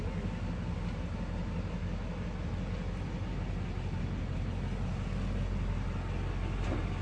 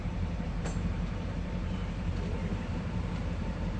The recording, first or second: first